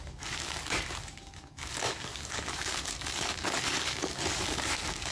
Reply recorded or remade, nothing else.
remade